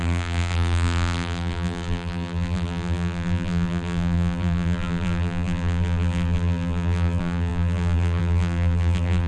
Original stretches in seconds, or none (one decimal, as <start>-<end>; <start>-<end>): none